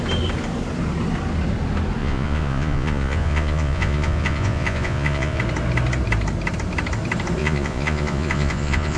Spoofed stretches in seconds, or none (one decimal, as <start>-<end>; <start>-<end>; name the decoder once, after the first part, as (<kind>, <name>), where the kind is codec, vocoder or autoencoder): 2.0-5.4 (vocoder, Vocos); 7.4-9.0